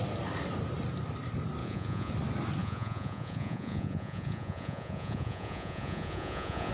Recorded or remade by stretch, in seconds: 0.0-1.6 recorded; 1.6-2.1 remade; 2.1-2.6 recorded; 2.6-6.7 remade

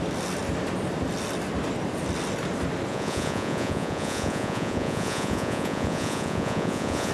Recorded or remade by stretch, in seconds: 0.0-2.9 recorded; 2.9-7.1 remade

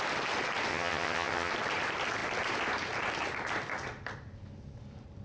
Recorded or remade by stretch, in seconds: 0.0-0.7 recorded; 0.7-1.5 remade; 1.5-5.2 recorded

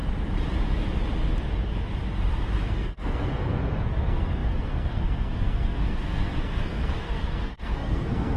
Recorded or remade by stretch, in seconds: 0.0-2.6 recorded; 2.6-8.4 remade

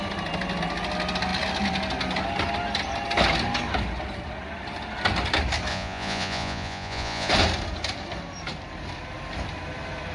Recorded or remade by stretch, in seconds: 0.0-5.7 recorded; 5.7-7.3 remade; 7.3-10.1 recorded